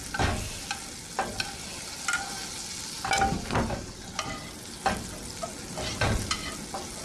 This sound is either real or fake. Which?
real